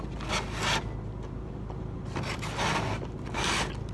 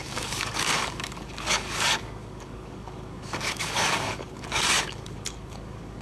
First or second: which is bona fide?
first